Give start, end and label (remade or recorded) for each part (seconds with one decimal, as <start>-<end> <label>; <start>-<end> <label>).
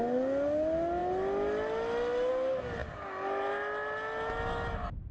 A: 0.0-5.1 recorded